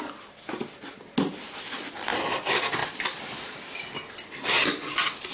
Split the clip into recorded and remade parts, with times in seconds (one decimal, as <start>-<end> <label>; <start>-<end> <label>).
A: 0.0-5.3 recorded